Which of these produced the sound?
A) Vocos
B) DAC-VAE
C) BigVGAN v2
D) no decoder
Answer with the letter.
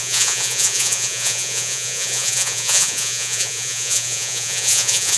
A